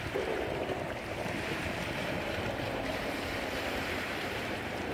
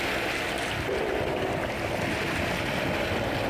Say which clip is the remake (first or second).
first